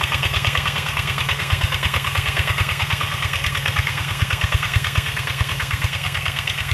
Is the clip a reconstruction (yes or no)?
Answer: yes